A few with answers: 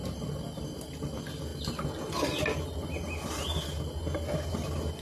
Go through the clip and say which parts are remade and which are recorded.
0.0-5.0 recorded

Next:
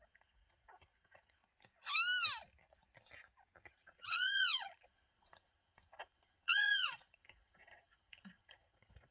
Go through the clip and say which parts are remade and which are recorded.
0.0-1.4 remade; 1.4-3.7 recorded; 3.7-9.1 remade